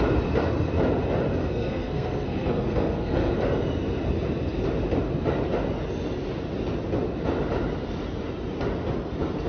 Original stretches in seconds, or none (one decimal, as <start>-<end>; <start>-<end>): 0.0-1.4; 3.3-9.5